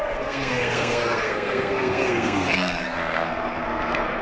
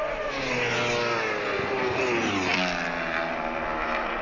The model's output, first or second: first